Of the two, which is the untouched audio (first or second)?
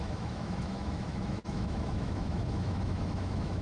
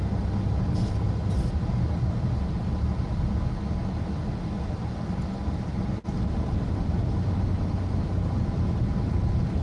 second